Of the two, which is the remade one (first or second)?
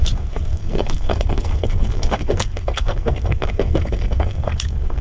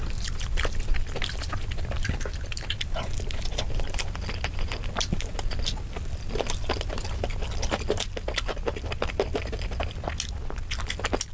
first